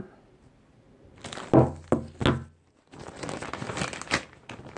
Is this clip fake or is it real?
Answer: real